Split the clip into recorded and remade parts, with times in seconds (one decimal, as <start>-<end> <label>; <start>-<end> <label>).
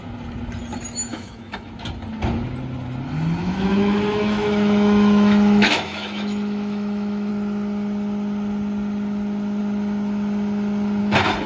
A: 0.0-1.1 recorded; 1.1-1.7 remade; 1.7-3.4 recorded; 3.4-7.3 remade; 7.3-11.5 recorded